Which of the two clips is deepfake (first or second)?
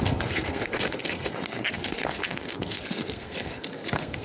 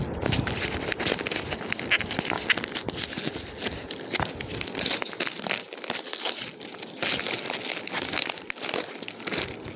first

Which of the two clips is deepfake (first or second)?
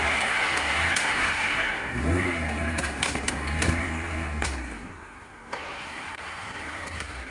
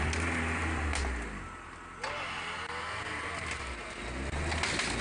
first